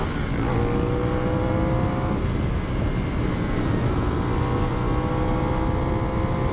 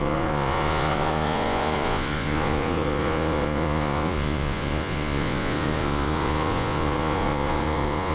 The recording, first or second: first